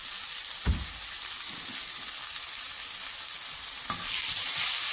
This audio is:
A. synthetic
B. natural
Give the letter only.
B